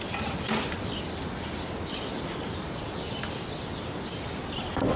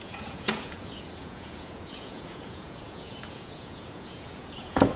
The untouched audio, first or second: first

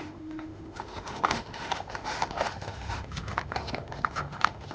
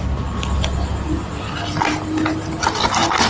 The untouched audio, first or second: second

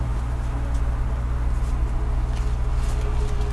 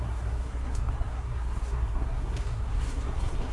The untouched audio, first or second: first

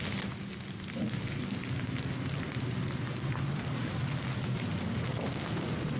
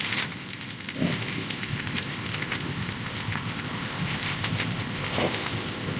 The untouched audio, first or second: first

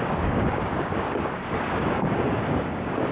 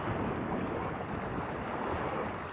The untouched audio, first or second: second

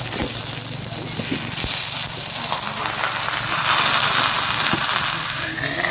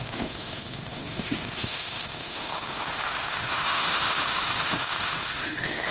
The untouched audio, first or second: first